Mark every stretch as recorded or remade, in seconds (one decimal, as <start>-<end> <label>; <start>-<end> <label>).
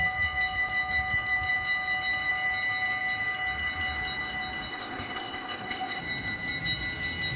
0.0-4.7 recorded; 4.7-6.0 remade; 6.0-7.4 recorded